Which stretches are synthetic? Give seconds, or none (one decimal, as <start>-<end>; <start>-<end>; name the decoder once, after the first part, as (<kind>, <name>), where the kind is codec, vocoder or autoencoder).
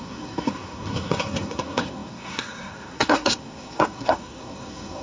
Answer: 0.0-5.0 (codec, SNAC)